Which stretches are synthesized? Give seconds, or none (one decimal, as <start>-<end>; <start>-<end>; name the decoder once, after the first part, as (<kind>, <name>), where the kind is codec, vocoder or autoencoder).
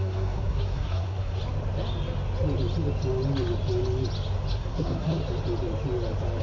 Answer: 0.0-1.4 (codec, SNAC); 4.5-5.2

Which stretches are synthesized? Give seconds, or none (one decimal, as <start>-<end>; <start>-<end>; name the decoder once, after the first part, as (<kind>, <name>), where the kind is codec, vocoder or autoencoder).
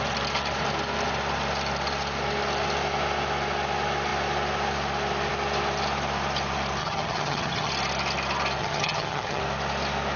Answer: 6.8-7.7 (vocoder, HiFi-GAN); 8.6-9.4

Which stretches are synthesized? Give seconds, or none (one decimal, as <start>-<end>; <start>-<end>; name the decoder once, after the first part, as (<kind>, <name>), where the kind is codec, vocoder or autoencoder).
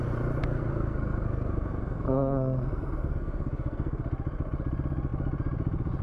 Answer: 0.4-4.0 (codec, SNAC)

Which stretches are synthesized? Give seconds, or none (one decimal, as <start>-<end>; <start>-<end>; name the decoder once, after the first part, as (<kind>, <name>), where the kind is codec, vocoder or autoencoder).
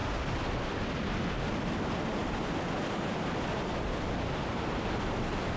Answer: none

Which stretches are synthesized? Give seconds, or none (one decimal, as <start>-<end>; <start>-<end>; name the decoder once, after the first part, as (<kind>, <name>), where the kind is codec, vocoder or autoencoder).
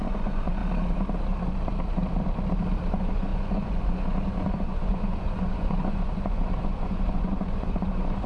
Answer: 0.0-0.6 (vocoder, Vocos); 2.9-8.3